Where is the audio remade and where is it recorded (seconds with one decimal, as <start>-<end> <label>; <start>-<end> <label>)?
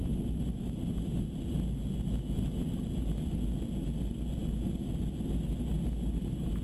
0.0-6.6 recorded